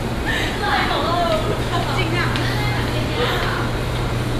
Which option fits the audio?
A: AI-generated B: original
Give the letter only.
B